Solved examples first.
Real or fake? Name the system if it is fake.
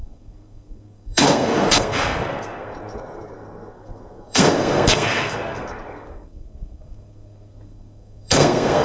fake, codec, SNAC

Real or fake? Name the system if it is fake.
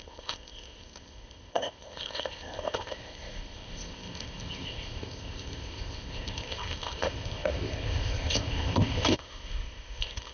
fake, codec, ZipCodec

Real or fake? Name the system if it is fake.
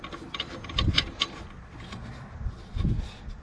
real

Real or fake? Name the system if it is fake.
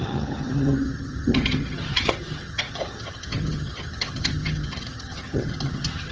fake, vocoder, HiFi-GAN